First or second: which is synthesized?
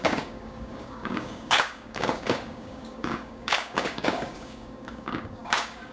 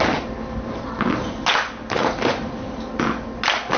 first